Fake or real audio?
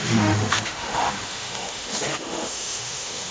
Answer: fake